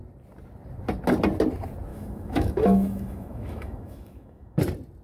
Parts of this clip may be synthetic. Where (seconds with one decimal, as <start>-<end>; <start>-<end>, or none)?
1.9-4.6